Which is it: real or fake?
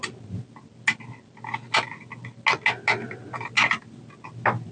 real